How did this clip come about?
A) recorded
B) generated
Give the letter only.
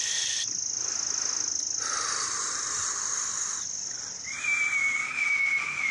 A